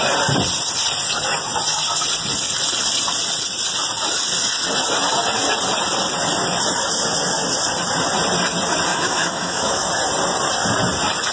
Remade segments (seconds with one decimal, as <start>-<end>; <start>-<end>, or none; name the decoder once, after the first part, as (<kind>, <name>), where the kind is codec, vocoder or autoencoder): 8.9-9.9 (autoencoder, DAC-VAE)